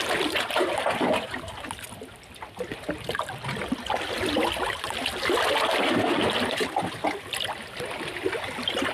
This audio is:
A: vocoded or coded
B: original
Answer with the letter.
B